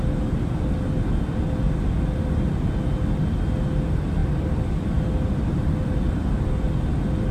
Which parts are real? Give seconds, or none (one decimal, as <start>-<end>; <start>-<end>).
0.0-4.2; 6.7-7.3